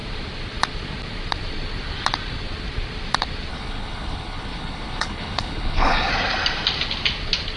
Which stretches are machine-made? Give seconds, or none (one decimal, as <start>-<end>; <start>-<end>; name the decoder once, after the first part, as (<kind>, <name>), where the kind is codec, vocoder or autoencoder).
3.5-6.1 (codec, HILCodec)

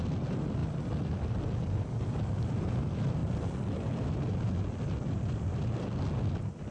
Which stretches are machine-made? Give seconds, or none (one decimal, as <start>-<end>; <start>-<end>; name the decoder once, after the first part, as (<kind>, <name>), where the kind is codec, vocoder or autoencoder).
none

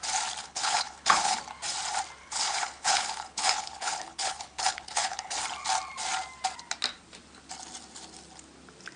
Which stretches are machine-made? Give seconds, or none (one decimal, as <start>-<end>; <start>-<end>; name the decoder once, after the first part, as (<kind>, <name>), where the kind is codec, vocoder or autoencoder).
0.4-1.4 (codec, HILCodec); 2.2-5.4

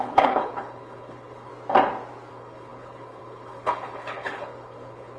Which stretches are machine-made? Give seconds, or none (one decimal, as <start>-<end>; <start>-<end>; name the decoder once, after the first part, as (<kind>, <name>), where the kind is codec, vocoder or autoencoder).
0.0-1.5 (codec, HILCodec); 2.3-5.2